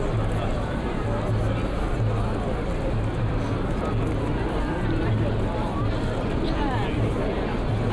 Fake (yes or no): no